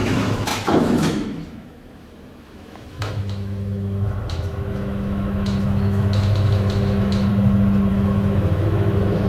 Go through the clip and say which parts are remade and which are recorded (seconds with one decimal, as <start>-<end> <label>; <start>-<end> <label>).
0.0-7.3 remade; 7.3-7.9 recorded; 7.9-9.3 remade